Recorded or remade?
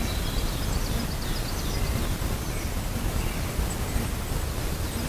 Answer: recorded